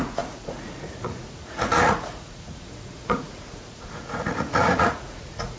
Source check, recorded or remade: remade